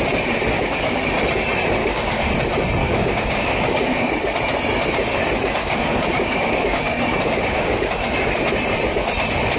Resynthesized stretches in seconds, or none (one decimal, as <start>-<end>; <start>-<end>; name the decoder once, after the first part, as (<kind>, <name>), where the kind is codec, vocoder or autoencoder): 0.5-1.0 (codec, DAC); 1.8-2.3; 2.8-4.1; 5.6-7.9